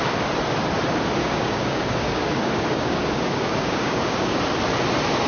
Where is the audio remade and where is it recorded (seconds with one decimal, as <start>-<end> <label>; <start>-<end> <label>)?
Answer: 0.0-1.2 recorded; 1.2-4.4 remade; 4.4-5.3 recorded